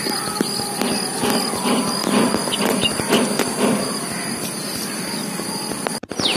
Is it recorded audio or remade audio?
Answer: recorded